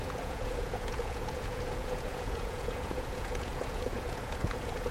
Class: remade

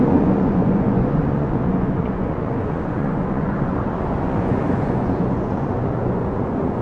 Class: remade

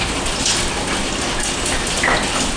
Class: recorded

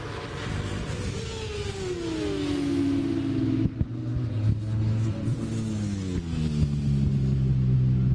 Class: recorded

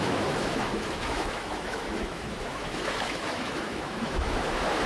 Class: remade